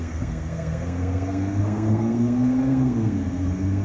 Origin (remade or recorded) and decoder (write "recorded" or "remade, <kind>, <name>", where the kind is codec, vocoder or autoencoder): remade, codec, SNAC